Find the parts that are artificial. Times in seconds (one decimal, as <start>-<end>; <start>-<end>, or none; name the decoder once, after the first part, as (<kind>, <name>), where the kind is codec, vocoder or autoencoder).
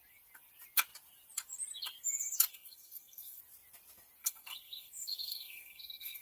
2.5-3.4 (codec, SNAC); 4.2-6.2